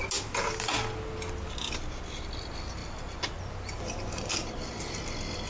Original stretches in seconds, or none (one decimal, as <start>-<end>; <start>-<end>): 0.0-5.5